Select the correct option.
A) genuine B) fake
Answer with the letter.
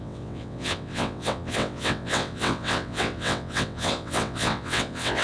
B